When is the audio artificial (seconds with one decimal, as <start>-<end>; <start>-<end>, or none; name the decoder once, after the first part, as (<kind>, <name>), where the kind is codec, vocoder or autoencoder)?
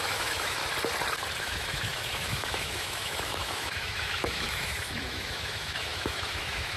0.0-0.6 (autoencoder, DAC-VAE); 1.4-6.8